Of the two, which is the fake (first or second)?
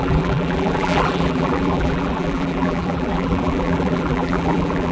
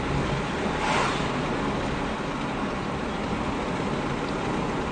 first